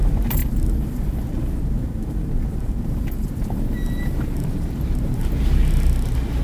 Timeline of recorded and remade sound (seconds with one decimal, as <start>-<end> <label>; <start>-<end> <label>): 0.0-0.4 remade; 0.4-4.2 recorded; 4.2-5.6 remade; 5.6-6.4 recorded